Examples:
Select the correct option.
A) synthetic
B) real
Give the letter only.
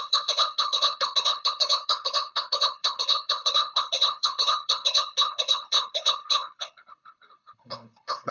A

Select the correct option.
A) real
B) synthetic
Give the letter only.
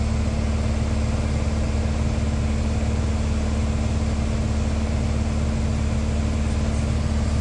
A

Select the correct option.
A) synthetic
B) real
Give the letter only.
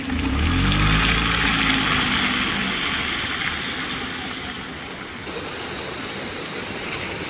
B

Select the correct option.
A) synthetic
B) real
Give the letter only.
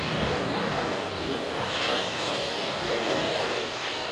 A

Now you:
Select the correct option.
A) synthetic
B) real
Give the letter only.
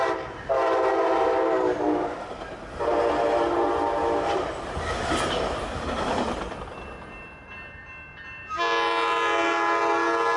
B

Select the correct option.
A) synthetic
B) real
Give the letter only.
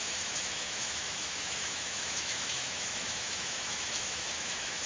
A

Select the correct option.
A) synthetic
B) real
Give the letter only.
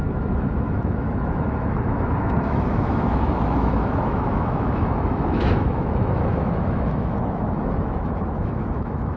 A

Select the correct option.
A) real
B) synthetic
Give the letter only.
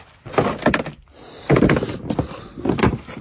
A